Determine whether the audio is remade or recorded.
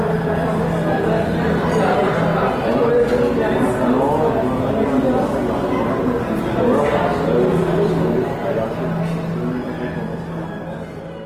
recorded